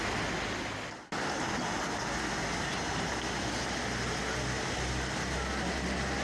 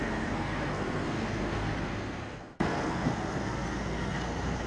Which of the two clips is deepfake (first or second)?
second